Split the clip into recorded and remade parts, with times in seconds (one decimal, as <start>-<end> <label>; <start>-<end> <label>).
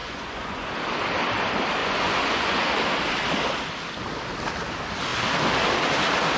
0.0-0.7 remade; 0.7-1.8 recorded; 1.8-2.7 remade; 2.7-6.4 recorded